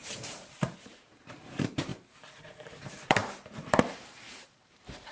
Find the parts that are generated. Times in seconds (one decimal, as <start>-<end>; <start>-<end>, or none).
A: 0.0-1.9; 2.8-5.1